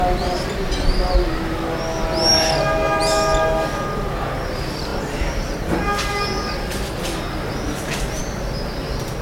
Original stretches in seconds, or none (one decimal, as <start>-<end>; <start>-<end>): 0.0-9.2